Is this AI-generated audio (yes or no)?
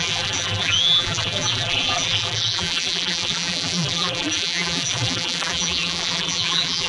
yes